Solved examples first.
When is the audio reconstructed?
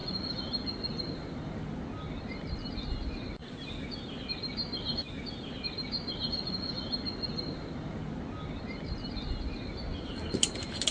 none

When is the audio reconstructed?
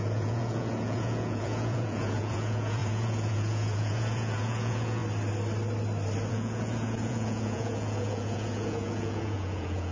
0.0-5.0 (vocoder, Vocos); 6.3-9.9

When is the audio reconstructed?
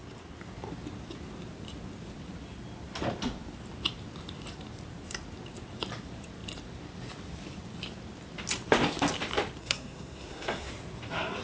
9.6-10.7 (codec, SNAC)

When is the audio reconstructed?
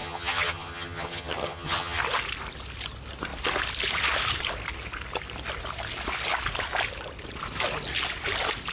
0.0-2.0 (vocoder, HiFi-GAN)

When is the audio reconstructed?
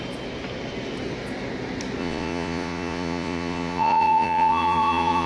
2.0-5.3 (vocoder, Vocos)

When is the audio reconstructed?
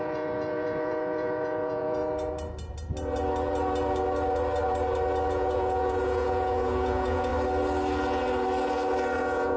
0.0-2.0 (vocoder, Vocos); 5.3-7.3; 9.2-9.6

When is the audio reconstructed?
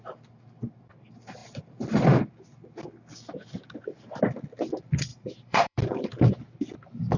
5.1-6.1 (vocoder, BigVGAN v2)